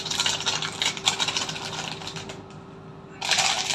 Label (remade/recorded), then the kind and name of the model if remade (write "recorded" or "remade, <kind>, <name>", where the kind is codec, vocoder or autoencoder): remade, vocoder, BigVGAN v2